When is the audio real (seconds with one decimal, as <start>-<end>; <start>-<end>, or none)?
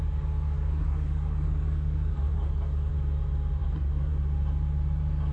2.9-3.6; 4.1-5.3